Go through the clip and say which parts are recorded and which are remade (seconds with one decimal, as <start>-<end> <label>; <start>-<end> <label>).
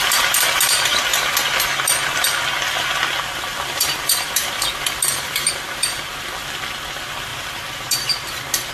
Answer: 0.0-3.5 recorded; 3.5-6.0 remade; 6.0-7.3 recorded; 7.3-8.7 remade